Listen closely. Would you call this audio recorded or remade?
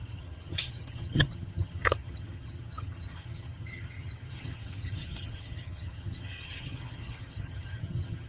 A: remade